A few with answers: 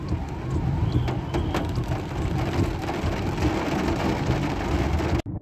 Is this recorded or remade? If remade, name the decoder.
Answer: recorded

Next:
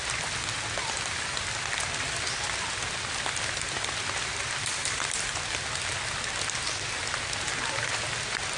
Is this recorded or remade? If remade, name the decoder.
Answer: recorded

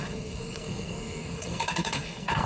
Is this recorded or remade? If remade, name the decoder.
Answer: remade, codec, SNAC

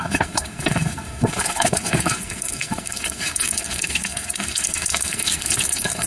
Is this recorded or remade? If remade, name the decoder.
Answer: remade, codec, SNAC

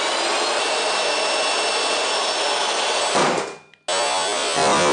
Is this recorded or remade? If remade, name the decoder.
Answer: recorded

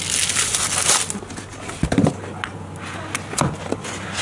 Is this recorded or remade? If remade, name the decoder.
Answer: recorded